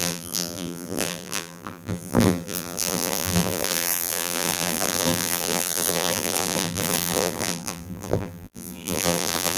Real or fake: fake